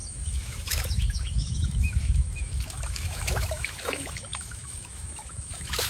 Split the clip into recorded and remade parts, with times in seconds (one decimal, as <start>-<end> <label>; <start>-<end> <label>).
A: 0.0-5.9 remade